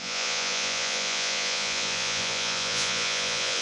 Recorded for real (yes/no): no